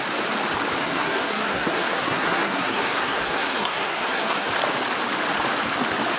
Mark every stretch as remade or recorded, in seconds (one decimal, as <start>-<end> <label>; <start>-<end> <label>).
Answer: 0.0-0.8 recorded; 0.8-4.5 remade; 4.5-6.2 recorded